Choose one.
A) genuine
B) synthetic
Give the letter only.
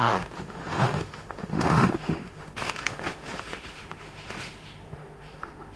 B